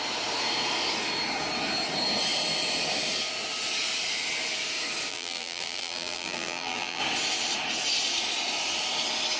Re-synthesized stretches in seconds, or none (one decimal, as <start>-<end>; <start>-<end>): 5.1-7.0